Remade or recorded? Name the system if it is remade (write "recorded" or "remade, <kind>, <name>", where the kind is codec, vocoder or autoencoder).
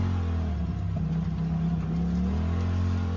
recorded